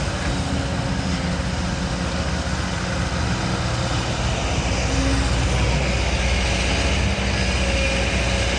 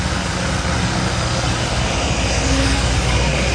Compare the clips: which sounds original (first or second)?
first